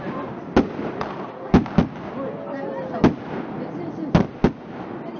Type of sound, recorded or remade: recorded